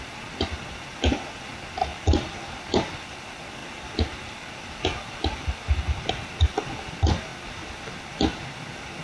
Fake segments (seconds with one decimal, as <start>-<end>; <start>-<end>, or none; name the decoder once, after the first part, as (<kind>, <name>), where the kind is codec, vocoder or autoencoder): 0.0-1.9 (vocoder, BigVGAN v2); 2.6-3.6; 6.1-7.3; 8.0-9.0